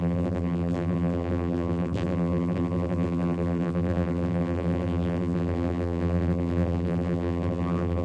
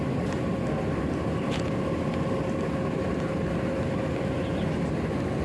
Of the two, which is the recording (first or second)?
second